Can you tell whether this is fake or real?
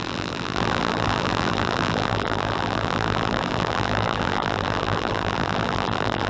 fake